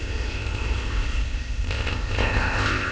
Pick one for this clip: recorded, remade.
remade